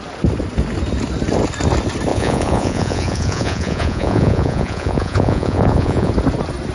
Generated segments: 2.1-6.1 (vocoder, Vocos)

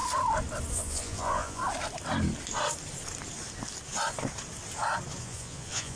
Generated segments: 0.7-1.6 (vocoder, Vocos); 5.2-6.0